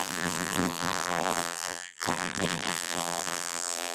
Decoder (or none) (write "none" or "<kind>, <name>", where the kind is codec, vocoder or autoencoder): vocoder, BigVGAN v2